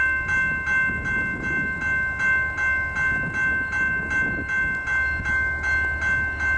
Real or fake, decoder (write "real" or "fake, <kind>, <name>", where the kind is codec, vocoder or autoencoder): real